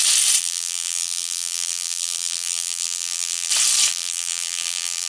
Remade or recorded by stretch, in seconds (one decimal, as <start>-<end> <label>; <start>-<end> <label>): 0.0-0.4 recorded; 0.4-3.5 remade; 3.5-3.9 recorded; 3.9-5.1 remade